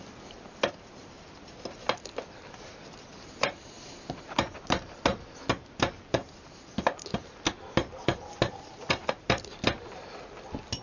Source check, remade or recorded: recorded